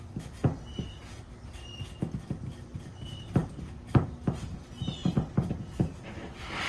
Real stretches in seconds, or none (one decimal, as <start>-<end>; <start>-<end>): 0.0-6.7